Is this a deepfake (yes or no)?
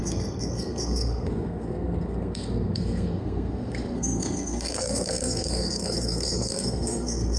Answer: yes